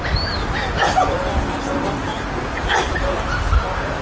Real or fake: real